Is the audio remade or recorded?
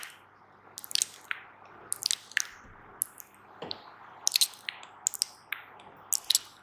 recorded